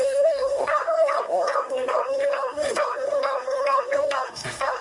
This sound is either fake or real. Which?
fake